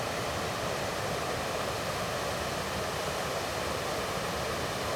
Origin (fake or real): real